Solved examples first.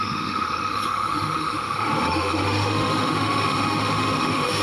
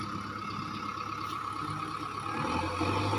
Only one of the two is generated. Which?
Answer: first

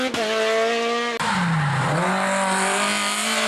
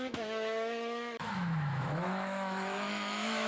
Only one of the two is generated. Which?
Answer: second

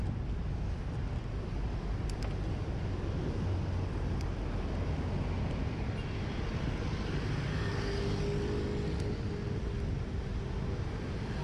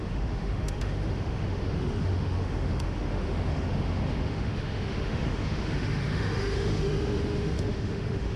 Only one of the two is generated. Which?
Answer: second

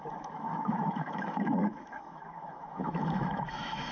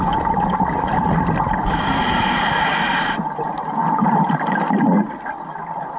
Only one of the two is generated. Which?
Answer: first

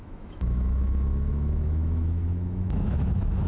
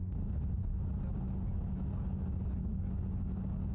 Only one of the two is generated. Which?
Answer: first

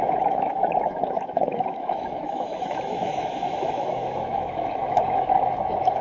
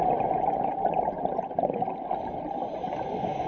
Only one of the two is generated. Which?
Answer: first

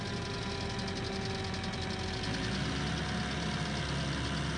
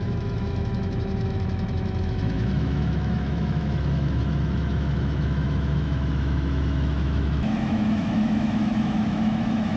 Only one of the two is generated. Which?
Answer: second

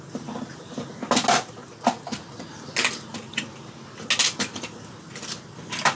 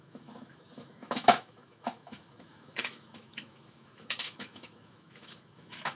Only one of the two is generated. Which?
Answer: second